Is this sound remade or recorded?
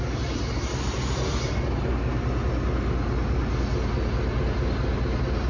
recorded